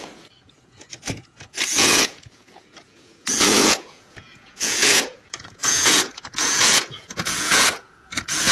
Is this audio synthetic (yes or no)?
yes